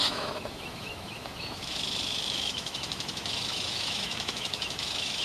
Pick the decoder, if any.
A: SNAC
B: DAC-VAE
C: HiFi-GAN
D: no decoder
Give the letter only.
B